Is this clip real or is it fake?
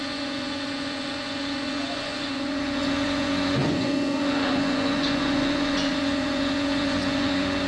fake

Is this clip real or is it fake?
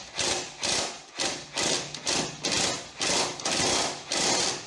real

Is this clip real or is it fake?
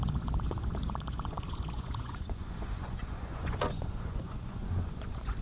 fake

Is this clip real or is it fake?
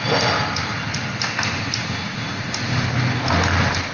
real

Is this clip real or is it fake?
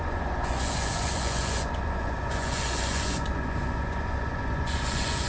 fake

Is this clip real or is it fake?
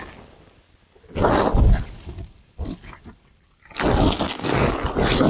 real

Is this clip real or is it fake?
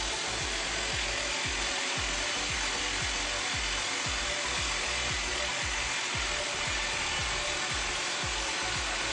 real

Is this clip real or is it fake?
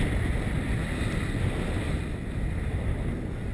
real